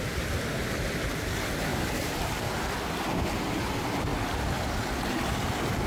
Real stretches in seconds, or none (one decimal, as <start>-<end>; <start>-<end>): 0.0-1.7; 2.4-5.9

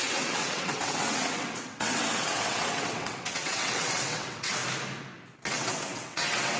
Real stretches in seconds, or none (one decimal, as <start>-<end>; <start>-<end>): 4.6-5.5

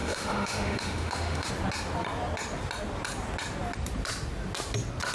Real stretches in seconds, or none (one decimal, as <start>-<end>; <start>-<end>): 1.5-5.1

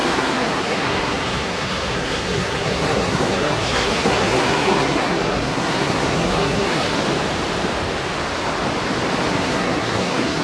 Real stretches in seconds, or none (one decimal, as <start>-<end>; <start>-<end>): 7.0-9.3

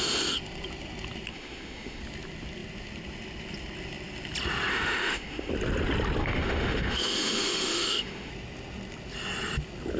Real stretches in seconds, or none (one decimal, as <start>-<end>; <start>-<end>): 0.0-1.3; 2.0-4.7; 5.5-6.2; 8.3-10.0

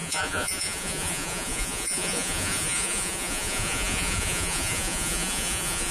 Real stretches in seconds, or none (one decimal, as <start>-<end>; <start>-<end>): none

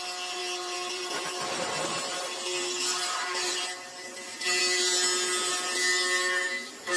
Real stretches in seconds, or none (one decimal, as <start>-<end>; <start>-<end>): 0.0-0.4; 4.6-7.0